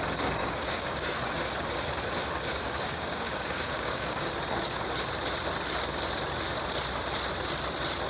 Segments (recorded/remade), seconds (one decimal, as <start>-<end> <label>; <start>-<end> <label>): 0.0-0.4 recorded; 0.4-1.2 remade; 1.2-2.5 recorded; 2.5-4.3 remade; 4.3-8.1 recorded